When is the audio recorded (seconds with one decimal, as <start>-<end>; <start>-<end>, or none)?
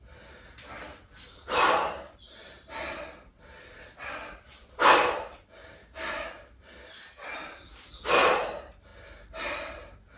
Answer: 0.0-5.8; 6.3-10.2